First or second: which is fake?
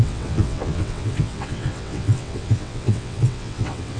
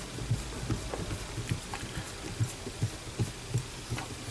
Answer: first